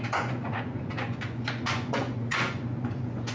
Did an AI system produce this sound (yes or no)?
yes